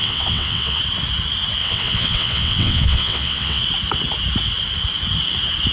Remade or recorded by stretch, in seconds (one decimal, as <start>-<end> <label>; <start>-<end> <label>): 0.0-0.8 remade; 0.8-1.6 recorded; 1.6-3.6 remade; 3.6-5.7 recorded